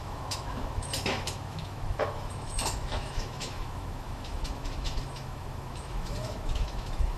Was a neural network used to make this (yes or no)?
yes